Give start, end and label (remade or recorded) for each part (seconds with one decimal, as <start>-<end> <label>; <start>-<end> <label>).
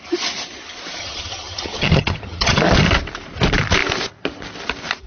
0.0-1.0 recorded; 1.0-2.6 remade; 2.6-5.1 recorded